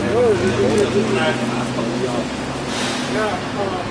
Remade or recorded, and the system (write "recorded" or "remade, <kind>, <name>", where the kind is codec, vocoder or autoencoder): recorded